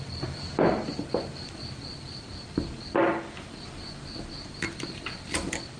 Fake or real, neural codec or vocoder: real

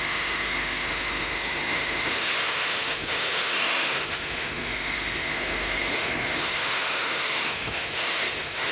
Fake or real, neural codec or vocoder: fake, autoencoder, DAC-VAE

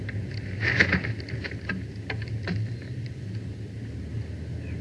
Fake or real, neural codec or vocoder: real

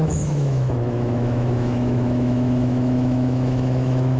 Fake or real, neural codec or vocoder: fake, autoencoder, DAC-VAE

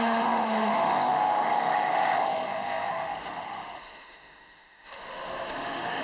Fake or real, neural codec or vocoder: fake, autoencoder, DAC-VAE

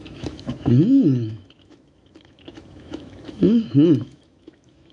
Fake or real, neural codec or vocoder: fake, autoencoder, DAC-VAE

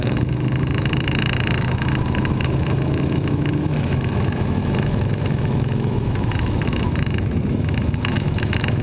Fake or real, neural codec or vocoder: fake, autoencoder, DAC-VAE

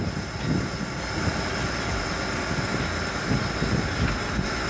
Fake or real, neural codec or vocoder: real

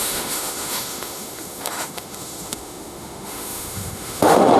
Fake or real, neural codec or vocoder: fake, autoencoder, DAC-VAE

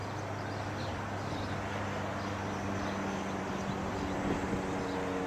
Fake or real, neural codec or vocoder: real